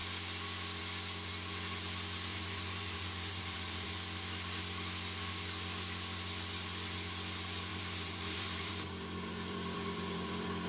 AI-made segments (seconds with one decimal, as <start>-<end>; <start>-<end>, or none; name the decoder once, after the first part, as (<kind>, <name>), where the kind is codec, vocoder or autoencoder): 2.3-3.9 (vocoder, BigVGAN v2); 7.7-10.7